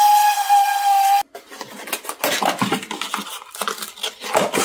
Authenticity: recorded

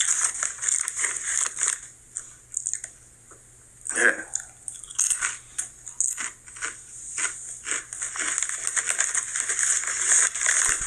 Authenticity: recorded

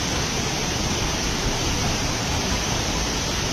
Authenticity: recorded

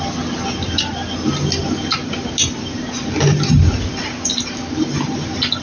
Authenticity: recorded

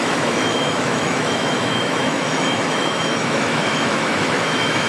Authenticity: remade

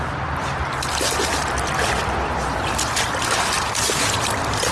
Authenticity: recorded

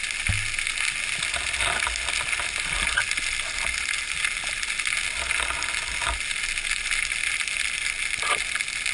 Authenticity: recorded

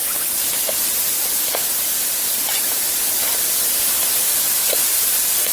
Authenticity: recorded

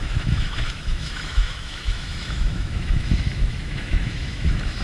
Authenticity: remade